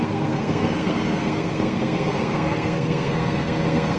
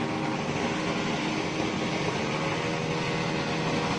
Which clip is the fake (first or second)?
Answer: first